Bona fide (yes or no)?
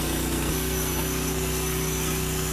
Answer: no